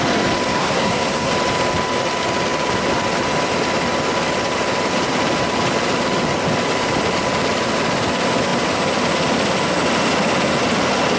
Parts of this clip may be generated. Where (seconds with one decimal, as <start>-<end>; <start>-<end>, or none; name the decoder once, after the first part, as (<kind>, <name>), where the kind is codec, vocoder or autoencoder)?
0.5-1.3 (codec, SNAC)